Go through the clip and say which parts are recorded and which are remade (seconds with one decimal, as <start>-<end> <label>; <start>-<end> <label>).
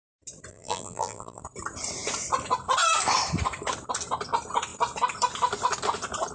0.0-0.5 recorded; 0.5-1.4 remade; 1.4-6.3 recorded